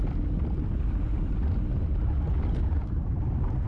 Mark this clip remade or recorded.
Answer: recorded